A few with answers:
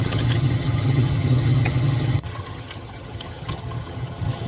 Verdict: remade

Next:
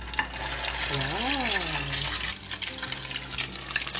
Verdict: recorded